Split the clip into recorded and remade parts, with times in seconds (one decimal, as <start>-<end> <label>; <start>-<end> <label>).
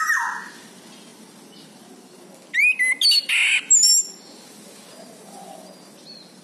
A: 0.0-6.4 recorded